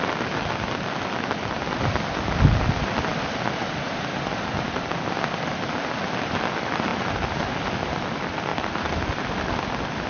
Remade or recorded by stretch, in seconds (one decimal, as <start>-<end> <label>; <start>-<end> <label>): 0.0-3.1 recorded; 3.1-3.9 remade; 3.9-6.9 recorded; 6.9-7.6 remade; 7.6-8.5 recorded; 8.5-9.4 remade; 9.4-10.1 recorded